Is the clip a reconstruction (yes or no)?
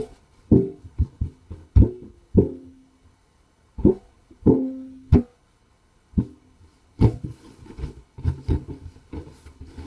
yes